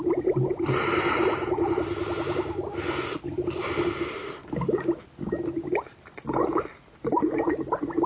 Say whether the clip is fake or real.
real